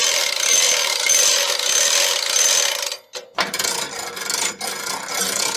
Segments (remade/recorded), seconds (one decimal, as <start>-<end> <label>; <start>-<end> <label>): 0.0-3.4 recorded; 3.4-5.6 remade